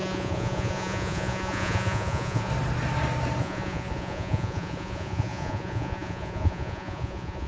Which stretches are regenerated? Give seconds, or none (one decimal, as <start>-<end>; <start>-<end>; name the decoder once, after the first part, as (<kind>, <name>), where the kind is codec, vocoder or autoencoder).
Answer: 0.0-2.5 (vocoder, Vocos); 3.4-7.5